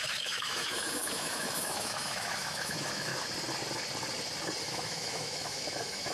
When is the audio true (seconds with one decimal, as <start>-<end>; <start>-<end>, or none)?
3.1-4.6

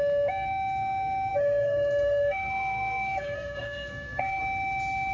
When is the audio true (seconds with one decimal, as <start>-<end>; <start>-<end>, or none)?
0.0-1.3; 4.4-5.1

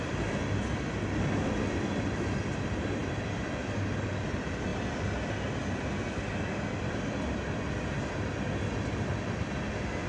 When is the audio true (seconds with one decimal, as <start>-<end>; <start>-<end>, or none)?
0.0-10.1

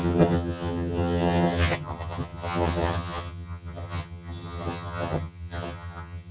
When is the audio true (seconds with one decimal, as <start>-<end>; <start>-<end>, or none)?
none

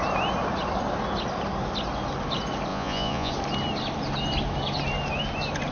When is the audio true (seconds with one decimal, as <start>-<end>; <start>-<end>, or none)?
0.0-2.7; 3.3-5.7

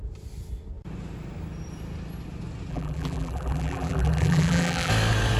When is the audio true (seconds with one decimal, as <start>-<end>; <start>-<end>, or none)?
0.0-2.7; 4.9-5.4

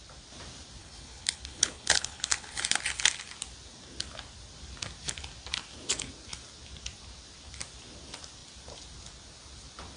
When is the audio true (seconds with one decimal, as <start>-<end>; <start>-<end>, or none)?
0.0-0.8; 2.6-10.0